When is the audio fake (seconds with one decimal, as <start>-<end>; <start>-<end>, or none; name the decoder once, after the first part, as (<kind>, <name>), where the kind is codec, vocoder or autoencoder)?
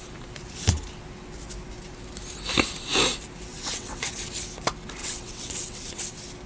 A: 3.5-4.1 (vocoder, WaveNeXt); 5.0-6.0